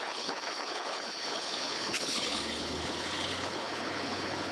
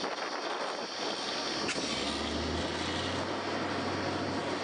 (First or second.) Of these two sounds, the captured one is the second